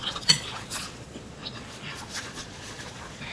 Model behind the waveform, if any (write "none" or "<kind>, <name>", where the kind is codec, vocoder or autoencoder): vocoder, Vocos